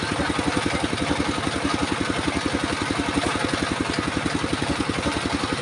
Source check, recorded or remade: recorded